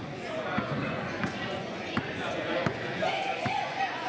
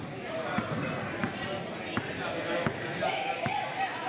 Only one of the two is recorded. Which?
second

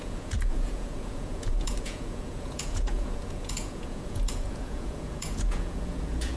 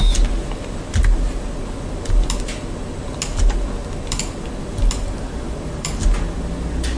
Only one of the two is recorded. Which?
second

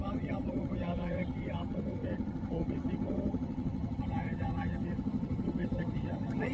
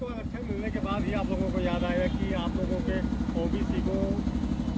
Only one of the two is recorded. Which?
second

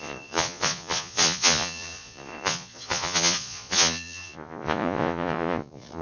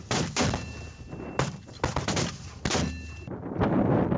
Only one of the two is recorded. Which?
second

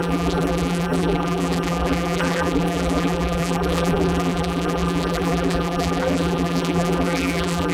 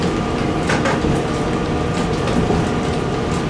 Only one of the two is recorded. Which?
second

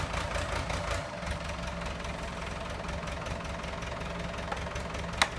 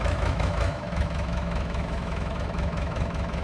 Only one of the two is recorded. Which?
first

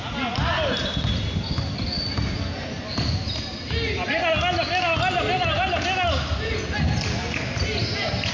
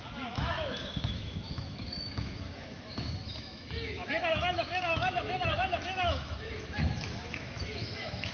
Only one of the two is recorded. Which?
first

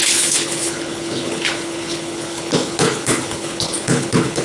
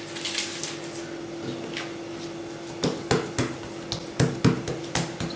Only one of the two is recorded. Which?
second